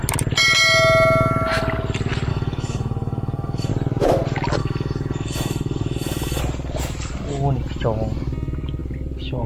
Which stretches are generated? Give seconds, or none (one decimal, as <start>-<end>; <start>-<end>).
2.3-3.7; 4.6-6.4